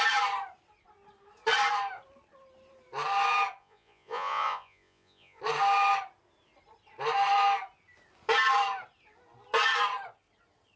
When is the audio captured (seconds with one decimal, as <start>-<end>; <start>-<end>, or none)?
0.0-3.6; 5.4-10.8